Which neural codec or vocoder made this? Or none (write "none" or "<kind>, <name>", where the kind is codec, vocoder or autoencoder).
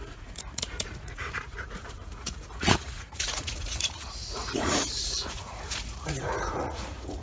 vocoder, Vocos